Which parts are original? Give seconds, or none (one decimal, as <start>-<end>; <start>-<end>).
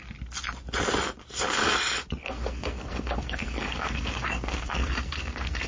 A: 0.0-2.2